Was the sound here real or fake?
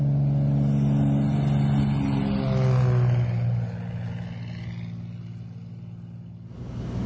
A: real